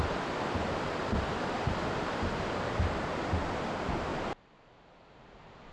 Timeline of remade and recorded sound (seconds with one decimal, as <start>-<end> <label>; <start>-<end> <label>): 0.0-0.6 remade; 0.6-2.4 recorded; 2.4-4.1 remade; 4.1-5.1 recorded; 5.1-5.7 remade